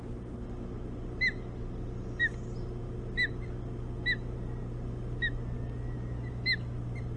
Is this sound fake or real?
real